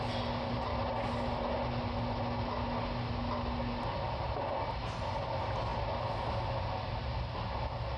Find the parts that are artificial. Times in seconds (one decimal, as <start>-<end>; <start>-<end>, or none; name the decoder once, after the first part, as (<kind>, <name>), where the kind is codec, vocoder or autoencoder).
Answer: none